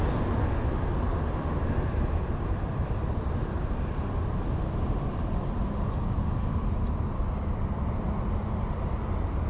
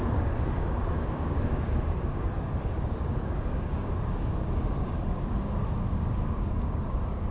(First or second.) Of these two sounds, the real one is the first